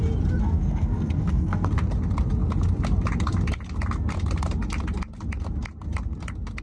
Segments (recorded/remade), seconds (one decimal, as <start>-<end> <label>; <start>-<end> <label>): 0.0-0.4 recorded; 0.4-1.7 remade; 1.7-6.6 recorded